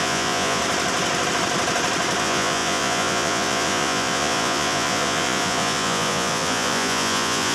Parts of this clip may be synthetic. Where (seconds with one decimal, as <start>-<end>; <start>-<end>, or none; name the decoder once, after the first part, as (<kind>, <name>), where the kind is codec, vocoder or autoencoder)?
0.0-0.6 (vocoder, Vocos); 2.2-7.5

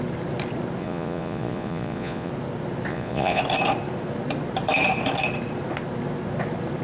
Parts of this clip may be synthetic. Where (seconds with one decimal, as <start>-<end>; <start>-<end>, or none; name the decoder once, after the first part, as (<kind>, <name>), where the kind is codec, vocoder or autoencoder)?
0.8-2.3 (vocoder, Vocos); 2.9-3.4